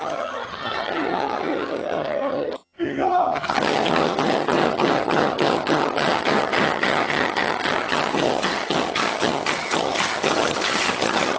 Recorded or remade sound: remade